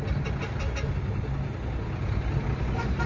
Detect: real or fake real